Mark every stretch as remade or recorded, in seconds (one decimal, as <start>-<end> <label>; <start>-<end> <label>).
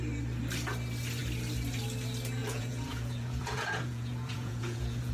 0.0-2.4 recorded; 2.4-5.1 remade